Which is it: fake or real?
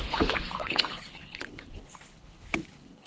fake